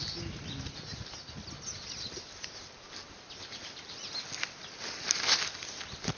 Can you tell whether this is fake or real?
real